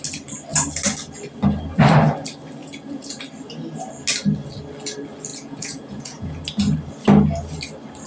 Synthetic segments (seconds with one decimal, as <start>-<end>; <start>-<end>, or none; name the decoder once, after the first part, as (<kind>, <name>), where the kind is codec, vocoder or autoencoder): 2.6-3.2 (vocoder, Vocos); 5.3-6.4